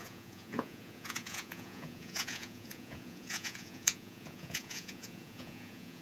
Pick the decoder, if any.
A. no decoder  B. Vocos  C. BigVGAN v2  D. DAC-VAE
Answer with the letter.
B